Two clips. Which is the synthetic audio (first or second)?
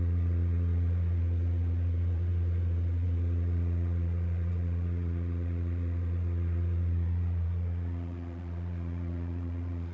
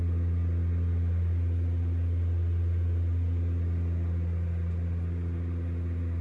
first